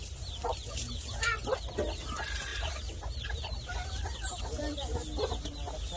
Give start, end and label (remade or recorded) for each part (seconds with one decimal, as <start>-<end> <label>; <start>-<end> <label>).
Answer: 0.0-6.0 recorded